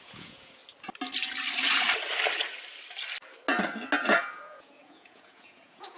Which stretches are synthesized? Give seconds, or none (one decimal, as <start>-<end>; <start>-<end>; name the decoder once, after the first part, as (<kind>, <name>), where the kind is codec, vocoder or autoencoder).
0.0-0.6 (vocoder, Vocos); 4.2-6.0